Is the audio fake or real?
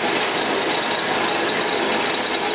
real